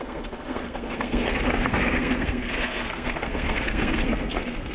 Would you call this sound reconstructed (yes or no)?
yes